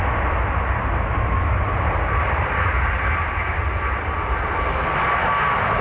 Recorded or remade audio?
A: recorded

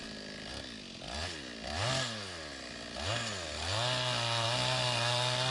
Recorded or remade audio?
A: recorded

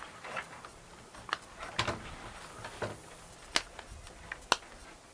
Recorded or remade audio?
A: recorded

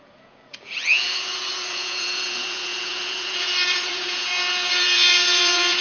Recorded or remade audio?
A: remade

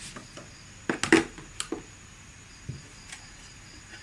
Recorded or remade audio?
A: recorded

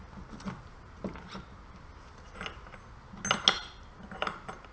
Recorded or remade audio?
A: recorded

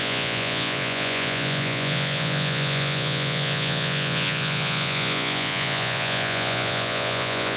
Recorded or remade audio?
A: remade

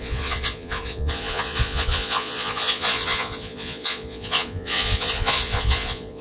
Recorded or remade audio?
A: remade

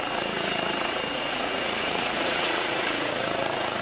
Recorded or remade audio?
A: remade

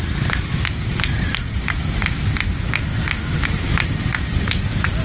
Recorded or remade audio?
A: recorded